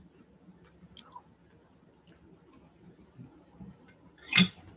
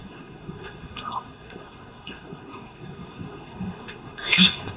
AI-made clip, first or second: second